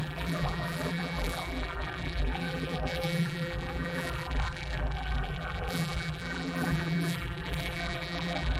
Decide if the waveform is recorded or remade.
remade